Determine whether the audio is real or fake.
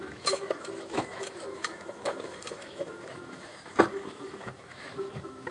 fake